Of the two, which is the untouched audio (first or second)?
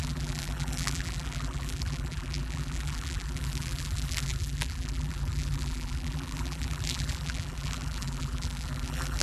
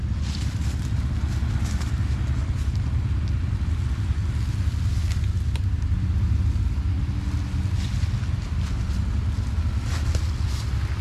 second